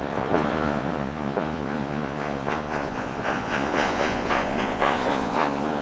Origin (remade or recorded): remade